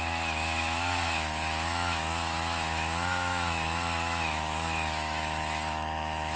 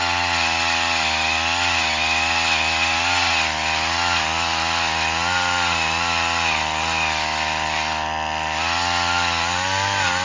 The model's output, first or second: first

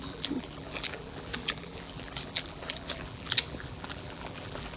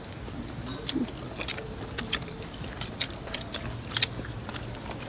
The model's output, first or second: first